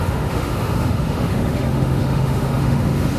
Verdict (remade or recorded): remade